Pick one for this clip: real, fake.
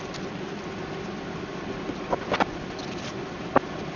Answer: real